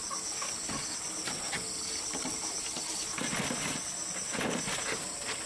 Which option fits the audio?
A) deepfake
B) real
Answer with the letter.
B